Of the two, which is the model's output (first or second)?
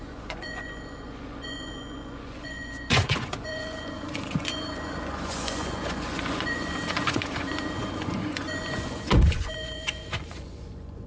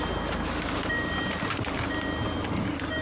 first